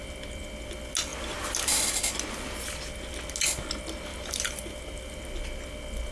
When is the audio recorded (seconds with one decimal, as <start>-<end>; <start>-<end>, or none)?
0.0-1.1; 1.9-4.1; 5.2-6.1